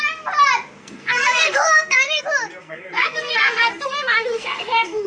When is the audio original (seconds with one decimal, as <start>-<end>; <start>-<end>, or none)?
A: 0.0-0.8; 2.2-2.6